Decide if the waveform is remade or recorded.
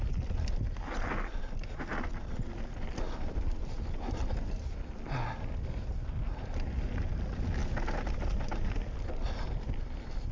recorded